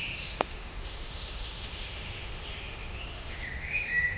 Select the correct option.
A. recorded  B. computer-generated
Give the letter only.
B